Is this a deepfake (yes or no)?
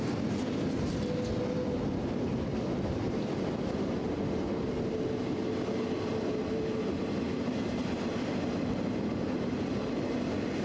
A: no